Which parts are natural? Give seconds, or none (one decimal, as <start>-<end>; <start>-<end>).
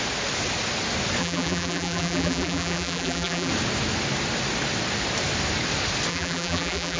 0.0-1.2; 3.5-6.1